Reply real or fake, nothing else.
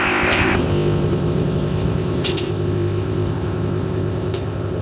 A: fake